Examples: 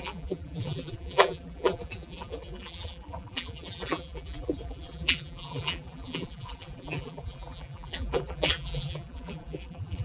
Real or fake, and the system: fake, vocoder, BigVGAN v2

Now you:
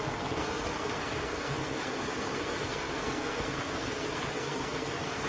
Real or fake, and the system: fake, codec, SNAC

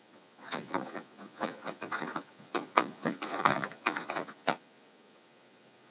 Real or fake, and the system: fake, vocoder, Vocos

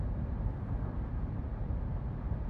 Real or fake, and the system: fake, vocoder, BigVGAN v2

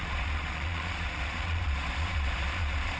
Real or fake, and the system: fake, vocoder, Vocos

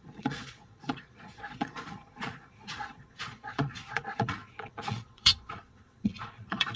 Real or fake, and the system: fake, vocoder, Vocos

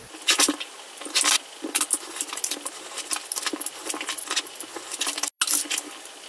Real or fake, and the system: real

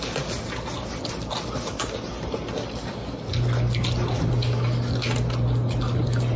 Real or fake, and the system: real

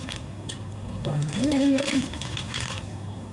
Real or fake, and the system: fake, codec, SNAC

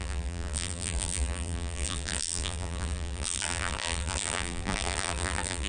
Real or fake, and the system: fake, vocoder, BigVGAN v2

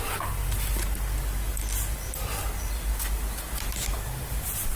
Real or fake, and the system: real